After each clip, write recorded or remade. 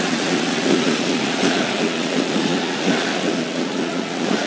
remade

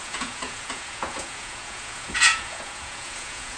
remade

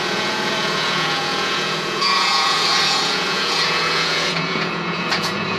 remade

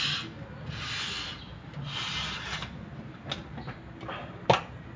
recorded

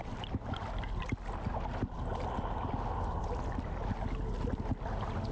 recorded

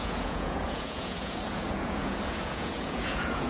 remade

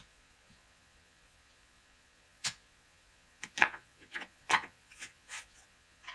remade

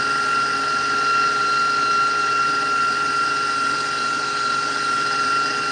recorded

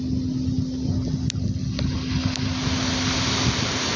recorded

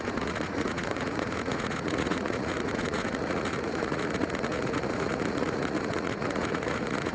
remade